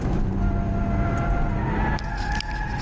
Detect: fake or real real